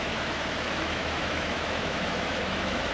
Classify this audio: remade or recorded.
remade